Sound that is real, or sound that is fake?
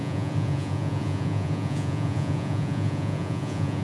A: fake